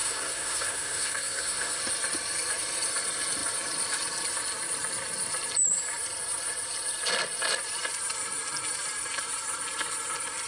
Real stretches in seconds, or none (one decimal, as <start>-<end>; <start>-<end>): 1.8-10.5